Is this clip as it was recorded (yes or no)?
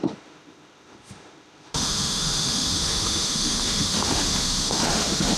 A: no